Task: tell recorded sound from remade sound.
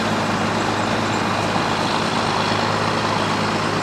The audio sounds recorded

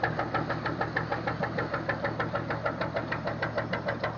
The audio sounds recorded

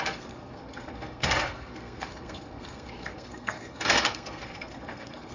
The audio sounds remade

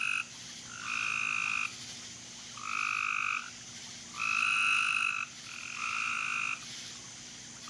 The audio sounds recorded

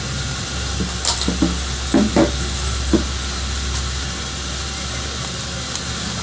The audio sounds recorded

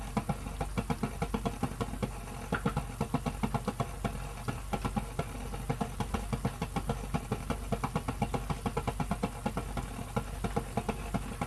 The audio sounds recorded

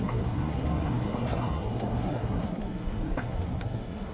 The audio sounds remade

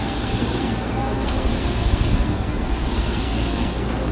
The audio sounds remade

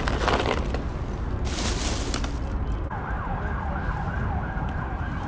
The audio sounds recorded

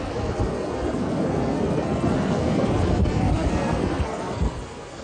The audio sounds remade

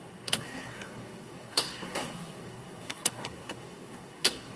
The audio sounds remade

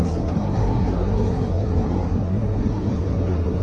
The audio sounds remade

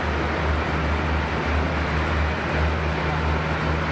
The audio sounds recorded